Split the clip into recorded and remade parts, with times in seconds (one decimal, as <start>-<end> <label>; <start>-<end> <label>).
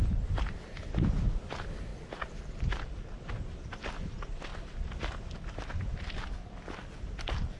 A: 0.0-1.9 recorded; 1.9-3.3 remade; 3.3-7.6 recorded